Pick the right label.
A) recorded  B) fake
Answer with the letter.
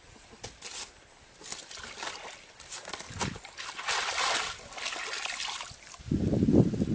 A